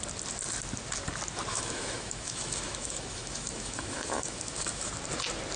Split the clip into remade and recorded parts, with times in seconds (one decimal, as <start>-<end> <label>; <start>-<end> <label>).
0.0-1.5 recorded; 1.5-4.9 remade; 4.9-5.6 recorded